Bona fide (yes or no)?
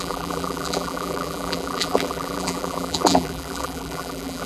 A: no